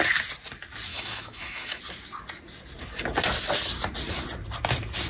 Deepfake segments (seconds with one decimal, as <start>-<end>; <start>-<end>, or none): 0.9-1.8

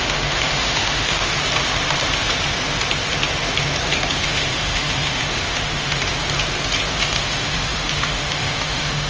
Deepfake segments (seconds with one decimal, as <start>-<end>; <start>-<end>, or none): 0.0-1.3; 4.2-6.1; 6.9-9.1

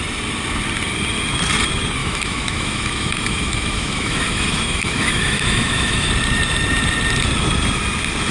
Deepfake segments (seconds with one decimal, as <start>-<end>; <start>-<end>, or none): 2.0-6.1

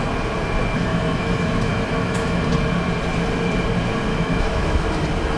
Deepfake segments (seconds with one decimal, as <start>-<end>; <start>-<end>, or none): 0.9-2.4; 4.1-4.8

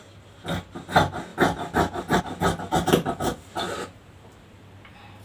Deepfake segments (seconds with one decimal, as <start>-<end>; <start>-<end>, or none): none

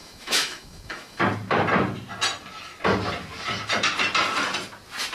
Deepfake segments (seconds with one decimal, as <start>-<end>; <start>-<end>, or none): 0.0-1.2

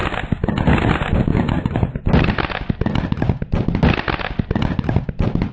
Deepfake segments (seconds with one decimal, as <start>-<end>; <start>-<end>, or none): none